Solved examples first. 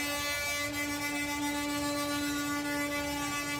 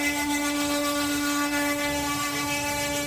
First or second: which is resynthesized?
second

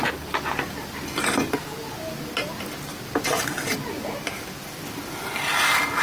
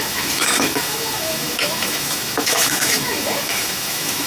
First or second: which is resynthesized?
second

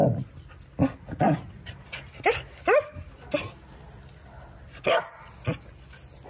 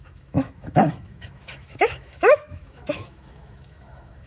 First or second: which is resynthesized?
second